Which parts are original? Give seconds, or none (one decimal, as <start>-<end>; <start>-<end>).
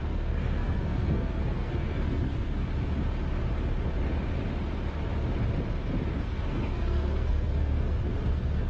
2.6-6.2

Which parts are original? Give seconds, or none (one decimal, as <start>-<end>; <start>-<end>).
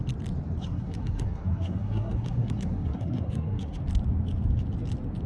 0.0-0.6; 3.8-5.3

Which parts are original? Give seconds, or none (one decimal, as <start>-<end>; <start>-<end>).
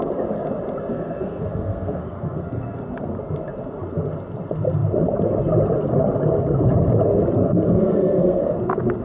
0.0-0.9; 2.8-7.4; 8.4-9.0